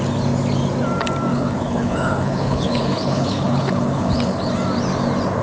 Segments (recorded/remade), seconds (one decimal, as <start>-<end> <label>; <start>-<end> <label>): 0.0-1.3 recorded; 1.3-4.5 remade; 4.5-5.4 recorded